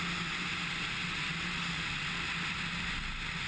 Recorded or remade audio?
recorded